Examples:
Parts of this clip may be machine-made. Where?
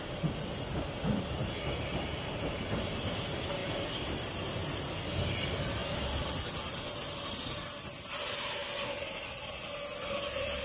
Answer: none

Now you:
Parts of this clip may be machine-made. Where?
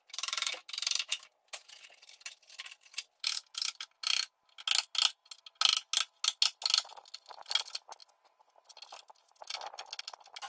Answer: none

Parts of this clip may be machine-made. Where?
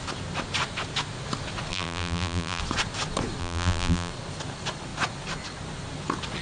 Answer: 1.7-2.6 (vocoder, BigVGAN v2); 3.4-4.1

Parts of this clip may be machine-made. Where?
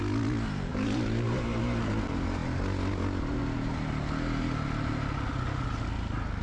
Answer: 0.7-1.6 (vocoder, BigVGAN v2)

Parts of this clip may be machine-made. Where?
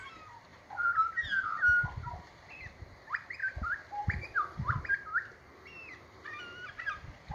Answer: 0.5-1.1 (vocoder, BigVGAN v2); 3.4-4.9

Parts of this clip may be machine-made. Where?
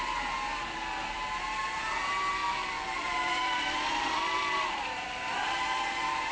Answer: 0.5-1.4 (vocoder, BigVGAN v2); 2.4-5.8